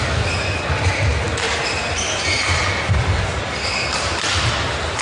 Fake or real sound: real